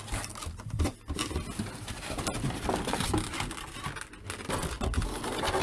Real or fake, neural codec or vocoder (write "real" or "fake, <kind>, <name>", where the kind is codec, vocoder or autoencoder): real